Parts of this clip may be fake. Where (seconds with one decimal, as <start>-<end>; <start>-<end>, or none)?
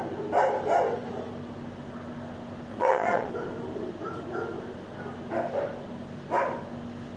2.7-3.3